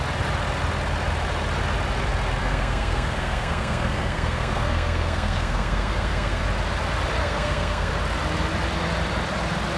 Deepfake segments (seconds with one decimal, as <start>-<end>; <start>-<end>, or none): 2.4-6.4; 7.2-7.9